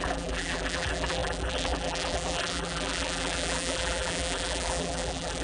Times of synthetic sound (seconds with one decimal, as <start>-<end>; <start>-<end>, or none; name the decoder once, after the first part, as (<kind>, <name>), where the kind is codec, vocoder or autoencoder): 0.0-5.4 (vocoder, BigVGAN v2)